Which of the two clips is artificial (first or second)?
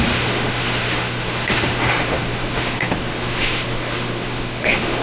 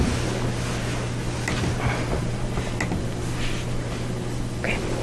first